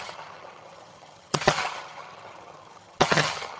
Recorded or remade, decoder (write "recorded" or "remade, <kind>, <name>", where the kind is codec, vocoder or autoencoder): remade, vocoder, HiFi-GAN